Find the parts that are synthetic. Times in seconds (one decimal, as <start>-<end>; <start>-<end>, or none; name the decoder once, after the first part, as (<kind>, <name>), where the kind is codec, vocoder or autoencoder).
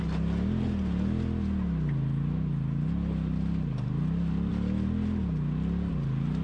none